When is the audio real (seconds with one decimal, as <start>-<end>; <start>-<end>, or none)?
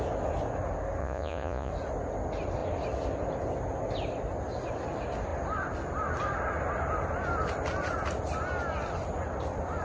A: 0.0-1.0; 1.7-9.8